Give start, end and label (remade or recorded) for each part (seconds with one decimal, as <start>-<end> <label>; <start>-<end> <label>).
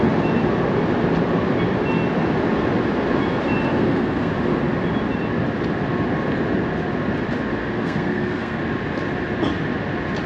0.0-3.7 recorded; 3.7-4.3 remade; 4.3-7.6 recorded; 7.6-8.6 remade; 8.6-10.3 recorded